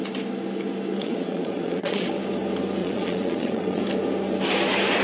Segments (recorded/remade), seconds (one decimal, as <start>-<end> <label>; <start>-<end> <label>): 0.0-1.0 recorded; 1.0-2.1 remade; 2.1-2.8 recorded; 2.8-3.8 remade; 3.8-5.0 recorded